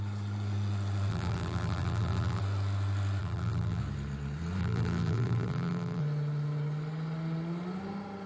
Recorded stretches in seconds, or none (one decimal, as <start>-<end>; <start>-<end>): 0.0-1.1; 2.4-3.2; 3.8-4.6; 6.0-8.3